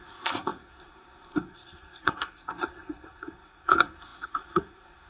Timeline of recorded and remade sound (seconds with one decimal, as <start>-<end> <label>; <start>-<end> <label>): 0.0-5.1 remade